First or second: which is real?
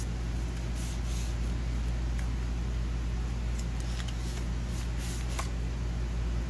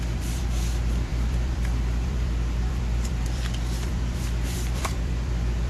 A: first